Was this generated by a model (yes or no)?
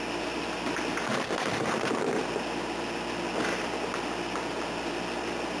no